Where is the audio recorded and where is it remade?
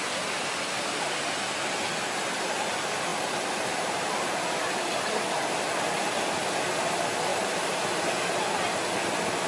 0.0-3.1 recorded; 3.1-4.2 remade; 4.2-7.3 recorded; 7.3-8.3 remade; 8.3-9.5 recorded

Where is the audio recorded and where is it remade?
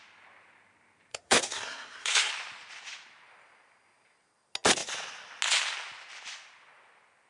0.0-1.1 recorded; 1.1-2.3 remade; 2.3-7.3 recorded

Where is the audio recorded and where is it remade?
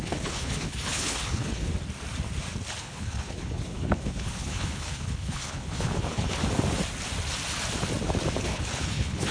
0.0-1.7 remade; 1.7-2.8 recorded; 2.8-6.4 remade; 6.4-8.4 recorded; 8.4-9.3 remade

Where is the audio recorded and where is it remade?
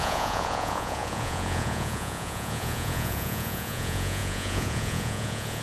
0.0-5.6 remade